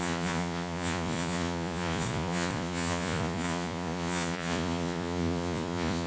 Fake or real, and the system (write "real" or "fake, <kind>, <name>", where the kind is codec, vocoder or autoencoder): fake, vocoder, Vocos